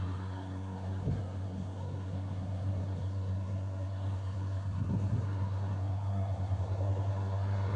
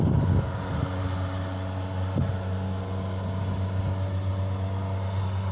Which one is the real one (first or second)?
second